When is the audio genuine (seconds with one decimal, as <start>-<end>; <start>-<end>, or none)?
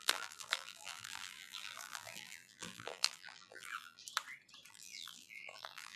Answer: 4.0-4.7